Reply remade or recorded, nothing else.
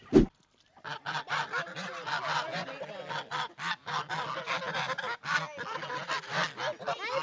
recorded